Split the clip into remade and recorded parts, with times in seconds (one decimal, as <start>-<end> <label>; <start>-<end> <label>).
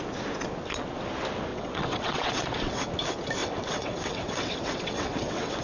0.0-1.5 recorded; 1.5-2.9 remade; 2.9-3.4 recorded; 3.4-5.6 remade